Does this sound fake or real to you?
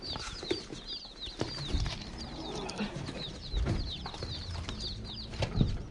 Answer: fake